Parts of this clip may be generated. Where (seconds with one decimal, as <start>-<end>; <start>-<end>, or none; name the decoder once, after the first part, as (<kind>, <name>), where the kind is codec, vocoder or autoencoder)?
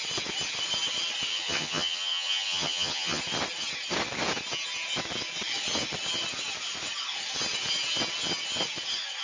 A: 1.3-3.2 (vocoder, HiFi-GAN)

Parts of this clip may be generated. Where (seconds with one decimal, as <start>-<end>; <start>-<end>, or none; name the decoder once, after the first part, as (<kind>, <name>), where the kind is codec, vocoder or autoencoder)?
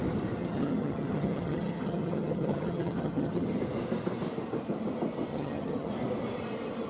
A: 0.4-3.6 (vocoder, HiFi-GAN); 5.3-5.9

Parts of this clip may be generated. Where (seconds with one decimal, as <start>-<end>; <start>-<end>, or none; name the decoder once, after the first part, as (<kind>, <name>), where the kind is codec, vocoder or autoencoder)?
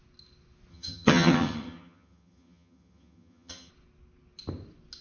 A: 0.7-3.7 (vocoder, HiFi-GAN)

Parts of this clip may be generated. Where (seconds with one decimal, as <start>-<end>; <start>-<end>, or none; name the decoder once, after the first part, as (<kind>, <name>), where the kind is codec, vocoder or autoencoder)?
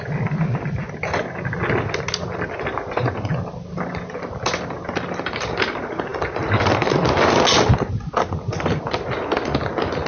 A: none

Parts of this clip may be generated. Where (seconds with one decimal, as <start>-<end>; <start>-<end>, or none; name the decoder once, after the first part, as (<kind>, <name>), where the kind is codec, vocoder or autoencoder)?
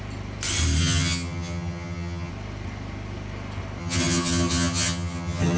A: 0.8-2.3 (vocoder, HiFi-GAN); 3.8-5.6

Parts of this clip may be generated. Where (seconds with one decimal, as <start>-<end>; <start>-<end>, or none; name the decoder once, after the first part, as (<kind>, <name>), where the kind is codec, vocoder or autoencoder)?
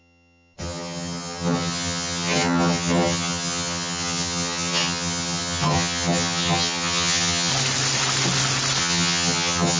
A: 0.0-7.5 (vocoder, HiFi-GAN); 8.8-9.8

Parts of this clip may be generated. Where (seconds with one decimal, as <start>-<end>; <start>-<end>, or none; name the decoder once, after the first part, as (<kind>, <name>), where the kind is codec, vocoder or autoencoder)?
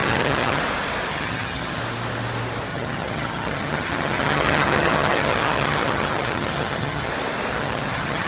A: 0.0-0.6 (vocoder, HiFi-GAN); 1.1-1.8; 2.7-7.1; 7.5-8.3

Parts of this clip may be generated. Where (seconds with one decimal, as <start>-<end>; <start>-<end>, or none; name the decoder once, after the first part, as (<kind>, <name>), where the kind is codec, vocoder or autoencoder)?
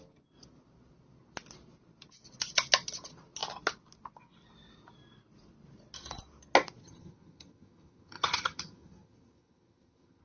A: 6.8-10.2 (vocoder, HiFi-GAN)